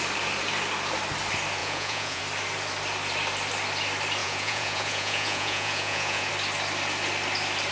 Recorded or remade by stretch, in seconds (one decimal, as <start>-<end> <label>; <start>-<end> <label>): 0.0-1.6 recorded; 1.6-2.2 remade; 2.2-4.2 recorded; 4.2-6.3 remade; 6.3-7.7 recorded